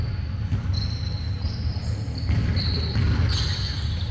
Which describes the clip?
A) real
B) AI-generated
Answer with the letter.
A